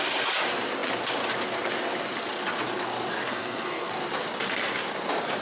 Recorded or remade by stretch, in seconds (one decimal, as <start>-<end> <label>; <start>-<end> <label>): 0.0-3.2 recorded; 3.2-3.9 remade; 3.9-5.4 recorded